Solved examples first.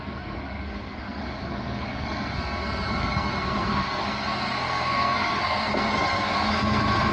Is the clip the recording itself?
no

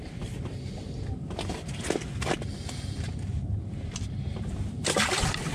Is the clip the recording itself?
yes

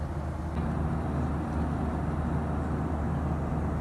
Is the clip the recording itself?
yes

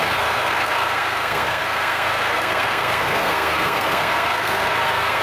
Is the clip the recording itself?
no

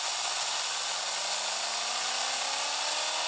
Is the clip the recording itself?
yes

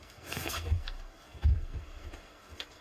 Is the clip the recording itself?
no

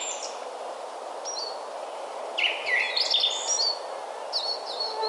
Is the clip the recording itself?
yes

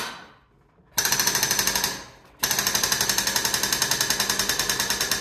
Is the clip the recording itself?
yes